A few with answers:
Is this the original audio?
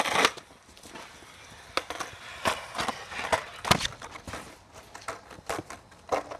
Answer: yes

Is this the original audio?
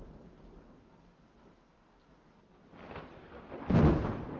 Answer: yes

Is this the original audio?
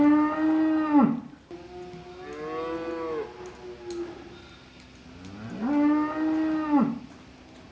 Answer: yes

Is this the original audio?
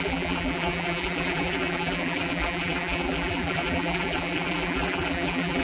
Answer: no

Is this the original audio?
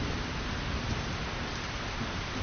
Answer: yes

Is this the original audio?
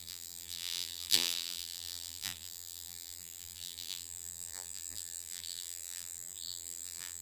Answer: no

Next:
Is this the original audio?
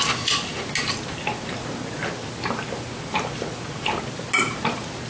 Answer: yes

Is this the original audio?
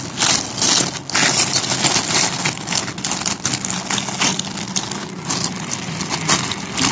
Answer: yes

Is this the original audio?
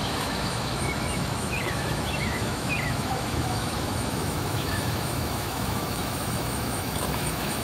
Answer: no